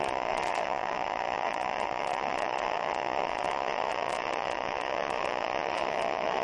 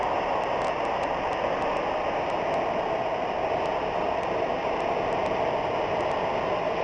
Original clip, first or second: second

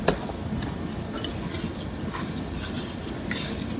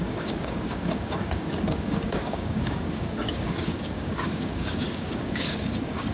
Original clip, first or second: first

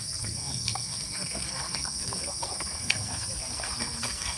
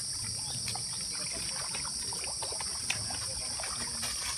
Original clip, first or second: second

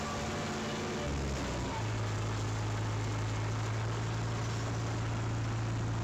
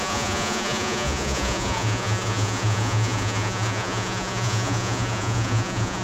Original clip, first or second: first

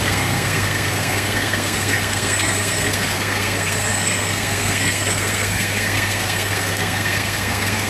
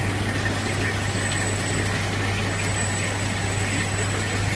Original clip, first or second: second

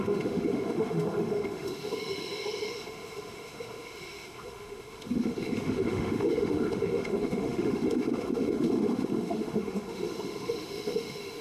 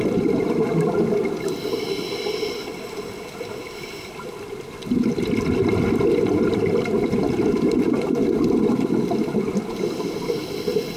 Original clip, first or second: second